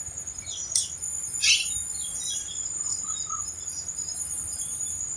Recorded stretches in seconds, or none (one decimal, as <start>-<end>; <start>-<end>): 0.8-1.9